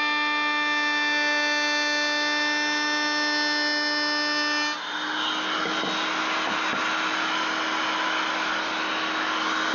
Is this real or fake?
real